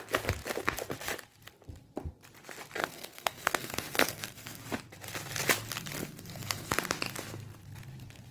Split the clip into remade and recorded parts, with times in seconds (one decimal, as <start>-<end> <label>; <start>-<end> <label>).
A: 0.0-2.8 recorded; 2.8-4.6 remade; 4.6-6.0 recorded; 6.0-6.7 remade; 6.7-8.3 recorded